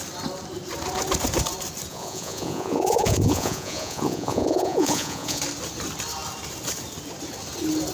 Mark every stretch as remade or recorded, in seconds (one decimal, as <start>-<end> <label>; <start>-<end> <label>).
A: 0.0-1.9 recorded; 1.9-5.4 remade; 5.4-7.9 recorded